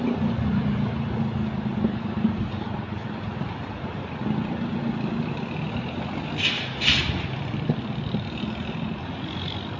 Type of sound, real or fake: real